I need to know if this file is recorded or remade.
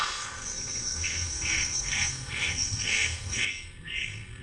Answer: remade